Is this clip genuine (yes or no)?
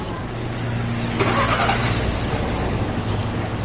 yes